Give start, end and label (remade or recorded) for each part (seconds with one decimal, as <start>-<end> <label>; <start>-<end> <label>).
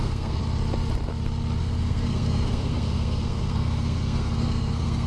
0.0-0.4 remade; 0.4-1.6 recorded; 1.6-5.1 remade